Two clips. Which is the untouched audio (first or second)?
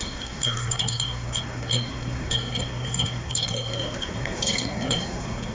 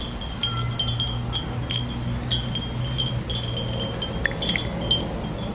second